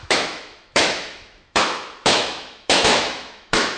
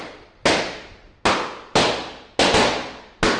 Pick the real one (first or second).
second